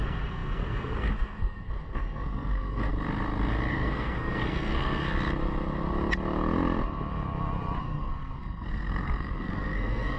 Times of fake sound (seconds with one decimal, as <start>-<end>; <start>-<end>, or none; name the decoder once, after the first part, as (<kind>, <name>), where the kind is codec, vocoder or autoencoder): 0.0-2.9 (codec, SNAC); 3.7-5.0; 7.8-10.2